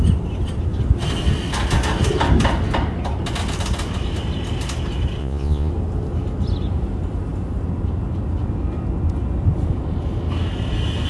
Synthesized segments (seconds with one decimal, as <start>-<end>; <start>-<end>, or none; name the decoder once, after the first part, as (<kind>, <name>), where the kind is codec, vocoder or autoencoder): 5.2-5.7 (vocoder, Vocos)